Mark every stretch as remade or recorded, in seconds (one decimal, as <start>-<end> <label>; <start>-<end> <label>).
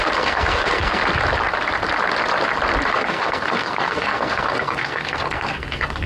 0.0-1.0 remade; 1.0-2.9 recorded; 2.9-6.1 remade